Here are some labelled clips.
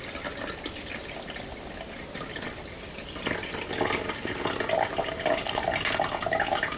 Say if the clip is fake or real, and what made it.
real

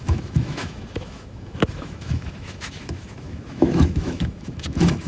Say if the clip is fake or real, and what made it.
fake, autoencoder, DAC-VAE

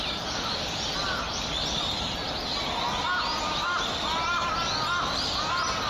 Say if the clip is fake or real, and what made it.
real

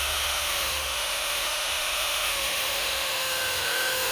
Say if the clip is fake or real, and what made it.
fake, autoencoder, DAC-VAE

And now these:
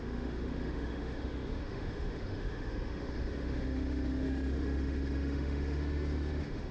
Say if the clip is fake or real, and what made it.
fake, autoencoder, DAC-VAE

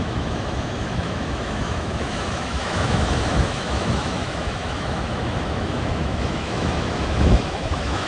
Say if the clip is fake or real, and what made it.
fake, autoencoder, DAC-VAE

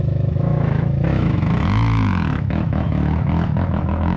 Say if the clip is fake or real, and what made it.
fake, autoencoder, DAC-VAE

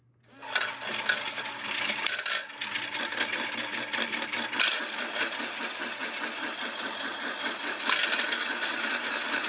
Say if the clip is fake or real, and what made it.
real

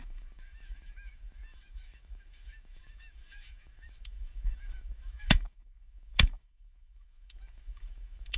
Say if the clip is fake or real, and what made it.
fake, autoencoder, DAC-VAE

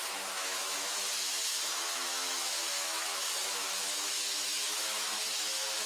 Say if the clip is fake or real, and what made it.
fake, autoencoder, DAC-VAE